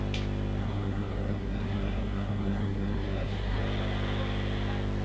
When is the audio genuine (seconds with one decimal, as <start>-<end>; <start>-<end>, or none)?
0.0-0.6; 3.6-5.0